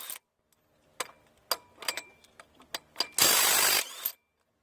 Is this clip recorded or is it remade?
recorded